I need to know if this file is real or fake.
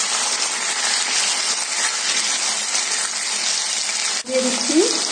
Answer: real